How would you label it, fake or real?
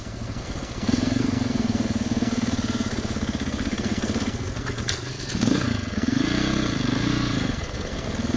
fake